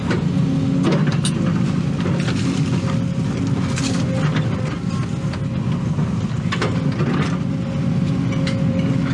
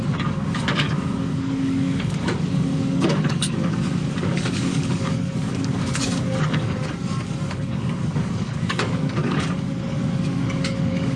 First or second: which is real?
first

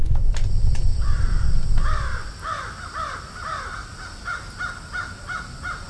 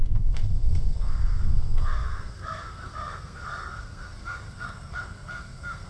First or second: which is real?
first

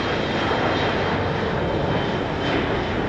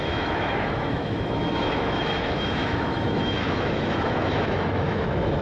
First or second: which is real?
first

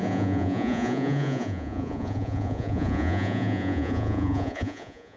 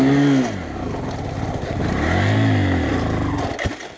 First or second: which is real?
second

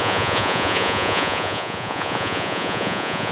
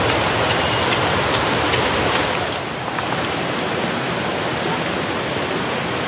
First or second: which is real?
second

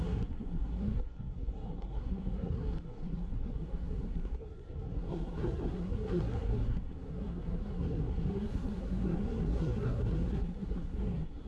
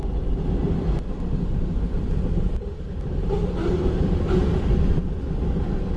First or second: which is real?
second